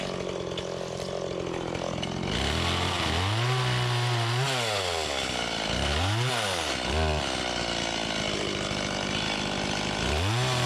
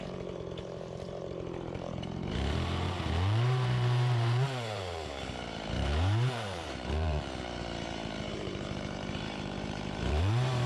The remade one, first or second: second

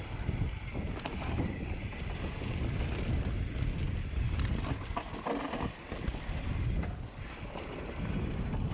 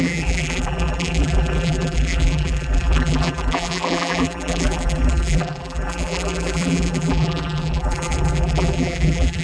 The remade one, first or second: second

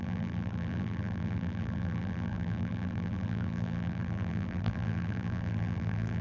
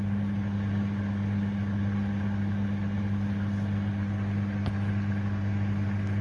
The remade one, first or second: first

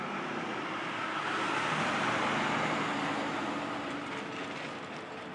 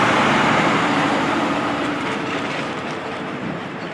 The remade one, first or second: second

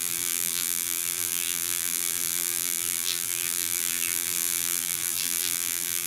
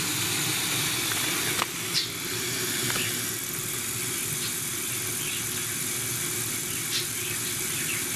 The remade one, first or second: first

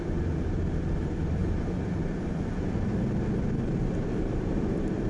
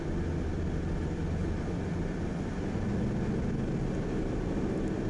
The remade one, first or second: first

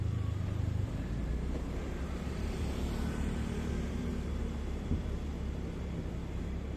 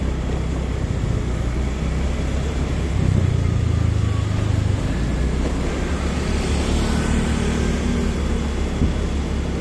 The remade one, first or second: first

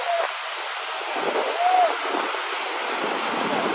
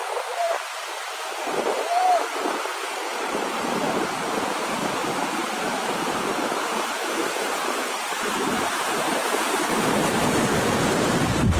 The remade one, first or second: second